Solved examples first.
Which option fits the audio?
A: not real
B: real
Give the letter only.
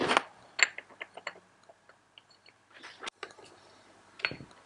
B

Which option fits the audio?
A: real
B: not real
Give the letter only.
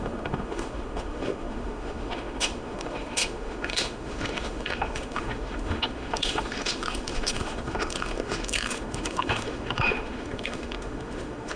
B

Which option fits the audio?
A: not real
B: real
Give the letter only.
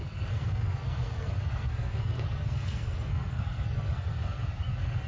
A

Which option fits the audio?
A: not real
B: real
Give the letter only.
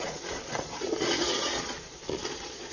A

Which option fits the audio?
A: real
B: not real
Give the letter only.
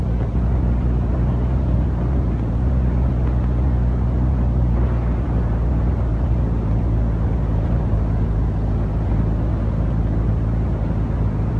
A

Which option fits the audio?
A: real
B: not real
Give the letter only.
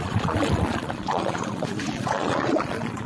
B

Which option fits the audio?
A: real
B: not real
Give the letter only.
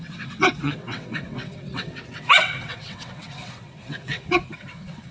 B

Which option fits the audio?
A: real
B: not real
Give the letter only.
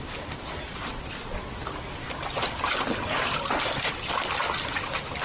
B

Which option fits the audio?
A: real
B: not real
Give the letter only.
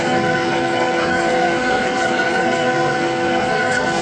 B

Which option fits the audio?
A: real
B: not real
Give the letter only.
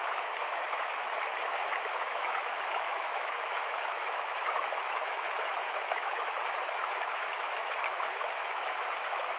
B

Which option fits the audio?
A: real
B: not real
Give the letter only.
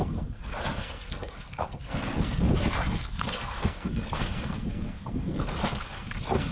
B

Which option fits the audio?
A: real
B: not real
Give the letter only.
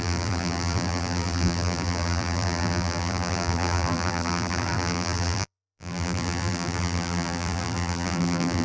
B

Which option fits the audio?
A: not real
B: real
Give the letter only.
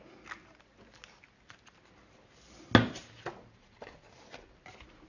B